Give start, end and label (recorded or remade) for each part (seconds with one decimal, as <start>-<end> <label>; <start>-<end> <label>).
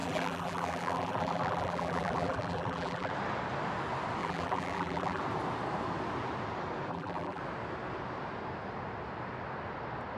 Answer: 0.0-3.1 remade; 3.1-4.2 recorded; 4.2-5.2 remade; 5.2-6.9 recorded; 6.9-7.4 remade; 7.4-10.2 recorded